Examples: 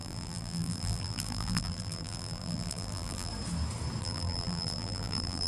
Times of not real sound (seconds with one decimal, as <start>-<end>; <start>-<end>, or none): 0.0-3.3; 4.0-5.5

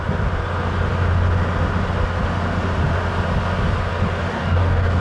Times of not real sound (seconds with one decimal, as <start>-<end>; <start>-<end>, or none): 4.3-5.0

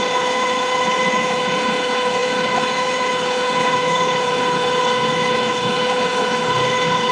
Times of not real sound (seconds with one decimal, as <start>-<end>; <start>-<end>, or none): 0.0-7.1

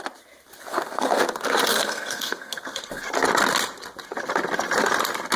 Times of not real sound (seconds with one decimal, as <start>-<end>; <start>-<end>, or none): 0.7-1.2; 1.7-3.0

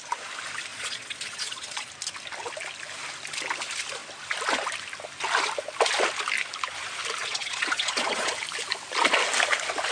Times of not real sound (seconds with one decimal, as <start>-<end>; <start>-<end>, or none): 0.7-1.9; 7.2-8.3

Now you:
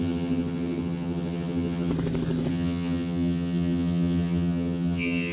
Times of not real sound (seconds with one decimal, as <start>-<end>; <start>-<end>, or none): 0.0-1.9; 2.5-5.3